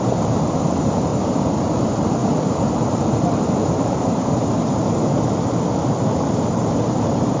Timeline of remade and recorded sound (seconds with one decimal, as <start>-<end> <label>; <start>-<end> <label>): 0.0-1.1 remade; 1.1-1.6 recorded; 1.6-7.4 remade